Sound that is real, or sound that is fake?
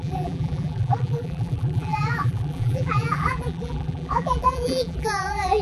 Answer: fake